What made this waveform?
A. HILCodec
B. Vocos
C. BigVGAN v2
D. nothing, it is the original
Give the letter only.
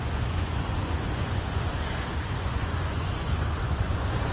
B